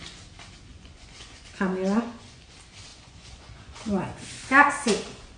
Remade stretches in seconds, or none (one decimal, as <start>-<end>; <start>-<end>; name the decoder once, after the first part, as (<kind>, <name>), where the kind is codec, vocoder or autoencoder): 0.7-2.5 (vocoder, Vocos); 2.9-5.4